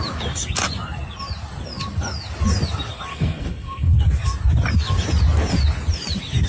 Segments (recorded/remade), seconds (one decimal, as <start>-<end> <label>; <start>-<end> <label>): 0.0-3.1 recorded; 3.1-4.0 remade; 4.0-6.5 recorded